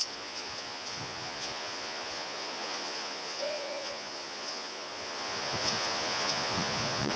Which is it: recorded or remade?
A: remade